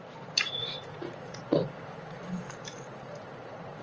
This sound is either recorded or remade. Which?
remade